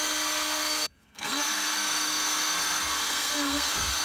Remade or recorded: remade